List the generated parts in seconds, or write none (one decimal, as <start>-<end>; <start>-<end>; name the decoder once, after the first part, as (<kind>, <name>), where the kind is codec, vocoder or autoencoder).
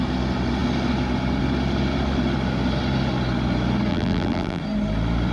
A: 3.9-4.6 (vocoder, BigVGAN v2)